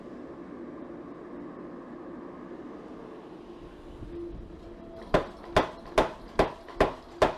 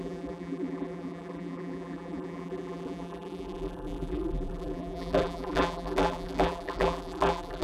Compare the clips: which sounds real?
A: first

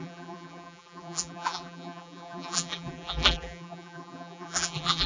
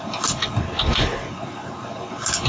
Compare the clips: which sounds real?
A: second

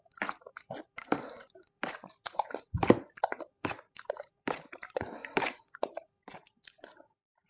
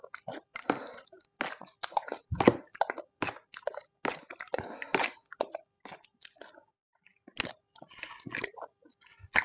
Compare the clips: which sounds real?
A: second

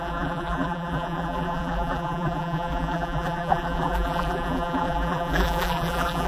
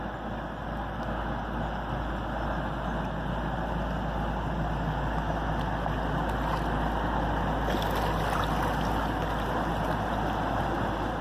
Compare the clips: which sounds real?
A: second